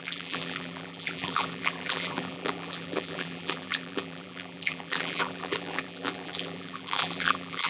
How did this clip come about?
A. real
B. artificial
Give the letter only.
B